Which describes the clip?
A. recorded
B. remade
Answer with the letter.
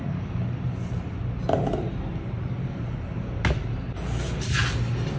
A